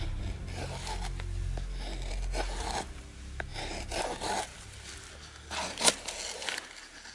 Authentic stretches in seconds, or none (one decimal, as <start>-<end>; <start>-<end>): 0.0-0.4; 2.1-3.5; 4.0-7.1